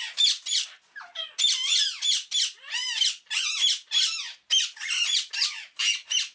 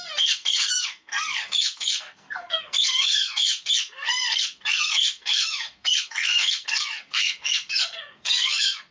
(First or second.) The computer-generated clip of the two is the second